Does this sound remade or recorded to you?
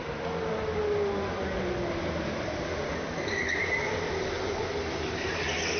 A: recorded